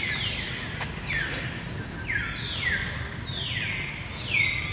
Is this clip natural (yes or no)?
yes